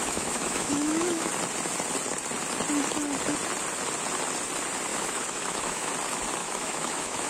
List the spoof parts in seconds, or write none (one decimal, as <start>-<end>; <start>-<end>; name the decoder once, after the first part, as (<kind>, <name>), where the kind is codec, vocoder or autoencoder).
0.0-1.3 (autoencoder, DAC-VAE); 4.9-5.9; 6.4-7.3